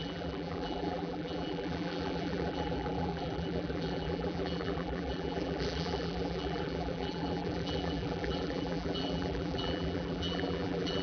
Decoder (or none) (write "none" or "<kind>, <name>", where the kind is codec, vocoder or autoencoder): vocoder, BigVGAN v2